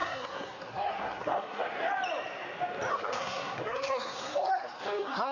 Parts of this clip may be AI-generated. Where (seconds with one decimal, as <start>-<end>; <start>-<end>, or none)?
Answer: 0.0-1.9; 2.9-5.3